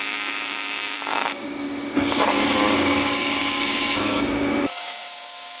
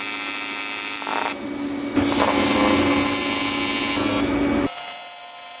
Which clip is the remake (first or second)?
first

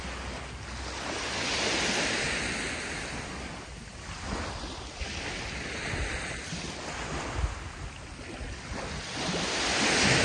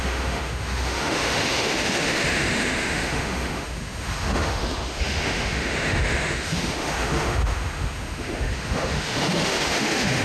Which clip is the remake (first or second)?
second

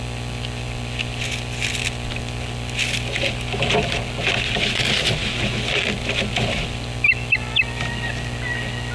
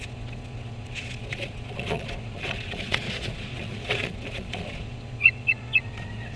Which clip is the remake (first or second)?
second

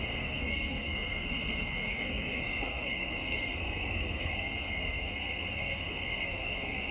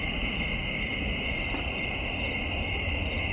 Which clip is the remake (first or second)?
first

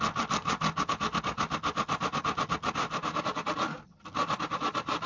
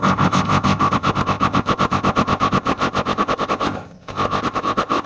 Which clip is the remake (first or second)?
second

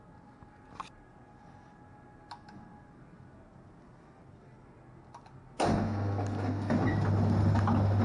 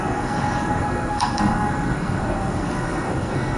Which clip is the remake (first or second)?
second